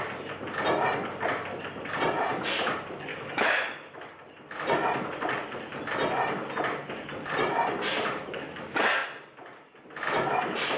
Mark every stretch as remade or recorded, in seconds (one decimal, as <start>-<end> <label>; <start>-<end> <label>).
0.0-3.1 recorded; 3.1-4.1 remade; 4.1-10.8 recorded